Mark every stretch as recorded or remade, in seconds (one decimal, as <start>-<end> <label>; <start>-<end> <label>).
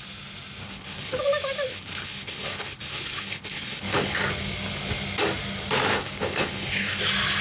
0.0-0.6 recorded; 0.6-1.2 remade; 1.2-1.7 recorded; 1.7-4.2 remade; 4.2-5.9 recorded; 5.9-7.0 remade; 7.0-7.4 recorded